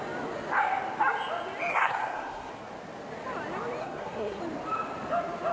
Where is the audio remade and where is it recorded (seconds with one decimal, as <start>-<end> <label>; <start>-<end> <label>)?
0.0-1.7 recorded; 1.7-2.5 remade; 2.5-3.8 recorded; 3.8-4.4 remade; 4.4-5.5 recorded